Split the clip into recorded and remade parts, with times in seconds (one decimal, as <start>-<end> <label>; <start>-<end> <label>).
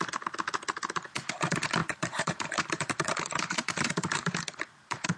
0.0-1.8 recorded; 1.8-5.2 remade